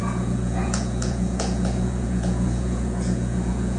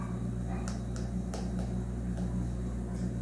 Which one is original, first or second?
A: second